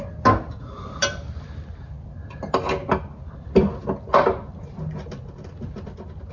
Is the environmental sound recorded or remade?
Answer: recorded